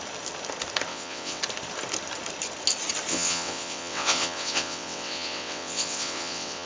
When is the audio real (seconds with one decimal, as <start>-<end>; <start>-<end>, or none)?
0.0-0.9; 1.4-3.1